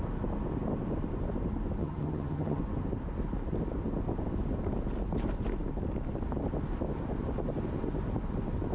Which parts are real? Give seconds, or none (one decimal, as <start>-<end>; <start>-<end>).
0.0-1.8; 2.6-8.7